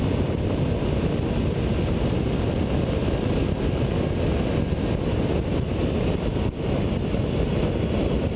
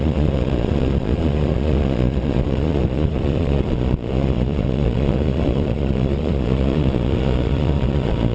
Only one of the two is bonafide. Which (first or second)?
first